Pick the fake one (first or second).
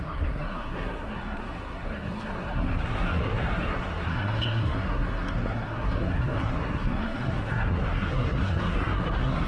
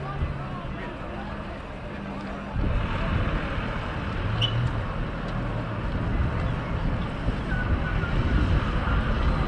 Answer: first